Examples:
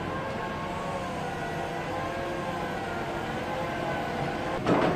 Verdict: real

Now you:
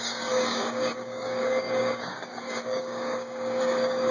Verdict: fake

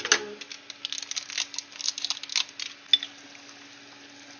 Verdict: real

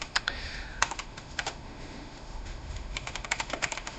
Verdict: fake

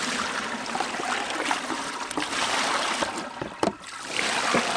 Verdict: real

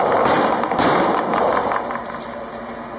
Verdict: real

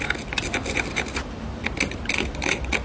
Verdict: real